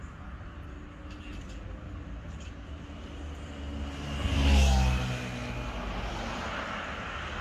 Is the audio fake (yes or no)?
no